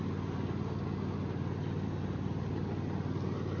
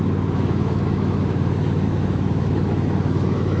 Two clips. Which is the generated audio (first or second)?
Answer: second